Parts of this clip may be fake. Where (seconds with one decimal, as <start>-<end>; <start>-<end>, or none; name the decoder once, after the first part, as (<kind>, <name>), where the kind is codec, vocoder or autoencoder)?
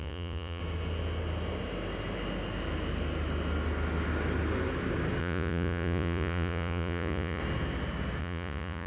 0.0-0.6 (vocoder, Vocos); 5.2-7.4; 8.2-8.9